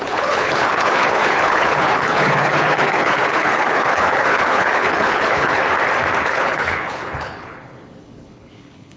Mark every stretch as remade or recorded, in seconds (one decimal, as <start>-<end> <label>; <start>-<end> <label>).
0.0-5.6 remade; 5.6-6.2 recorded; 6.2-9.0 remade